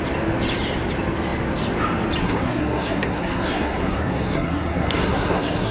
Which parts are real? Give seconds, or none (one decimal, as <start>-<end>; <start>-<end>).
0.0-2.2